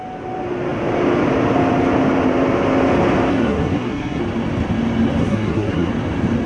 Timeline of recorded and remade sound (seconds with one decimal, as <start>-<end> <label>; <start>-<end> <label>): 0.0-3.3 recorded; 3.3-4.2 remade; 4.2-5.2 recorded; 5.2-5.9 remade; 5.9-6.5 recorded